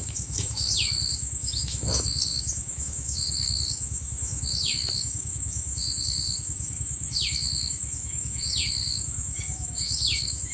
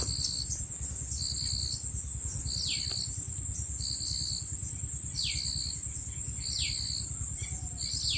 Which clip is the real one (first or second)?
second